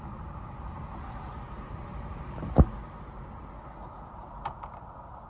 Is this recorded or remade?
recorded